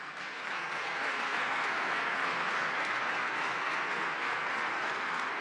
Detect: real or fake fake